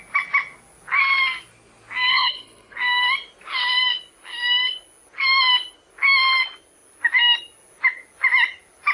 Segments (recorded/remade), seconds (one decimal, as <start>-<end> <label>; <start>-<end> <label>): 0.0-2.1 recorded; 2.1-2.8 remade; 2.8-8.9 recorded